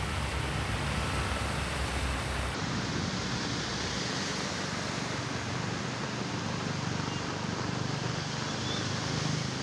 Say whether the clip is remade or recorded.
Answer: recorded